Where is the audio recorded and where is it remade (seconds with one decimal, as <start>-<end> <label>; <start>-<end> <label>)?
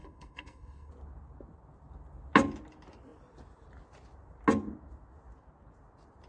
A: 0.0-0.9 remade; 0.9-6.3 recorded